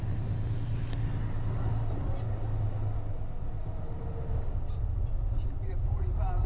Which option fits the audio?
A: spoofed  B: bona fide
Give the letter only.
B